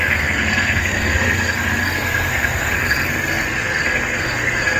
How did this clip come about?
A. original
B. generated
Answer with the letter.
B